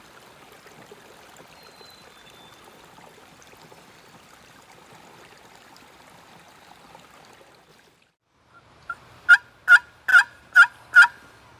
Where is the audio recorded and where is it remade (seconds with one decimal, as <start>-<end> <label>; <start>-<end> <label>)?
0.0-10.1 recorded; 10.1-10.7 remade; 10.7-11.6 recorded